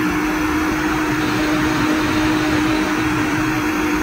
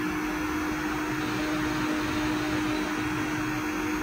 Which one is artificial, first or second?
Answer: first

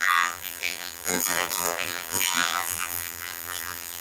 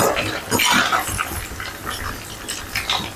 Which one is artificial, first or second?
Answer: first